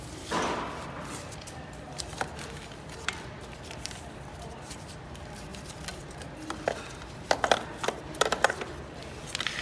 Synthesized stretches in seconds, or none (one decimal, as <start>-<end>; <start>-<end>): 0.0-9.6